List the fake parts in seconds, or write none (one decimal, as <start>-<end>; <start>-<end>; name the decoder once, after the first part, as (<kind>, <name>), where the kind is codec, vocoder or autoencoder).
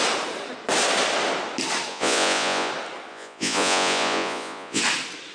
1.9-2.7 (vocoder, Vocos); 3.1-4.8